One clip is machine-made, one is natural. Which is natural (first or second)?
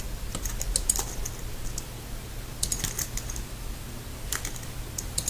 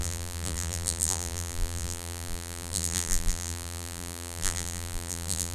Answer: first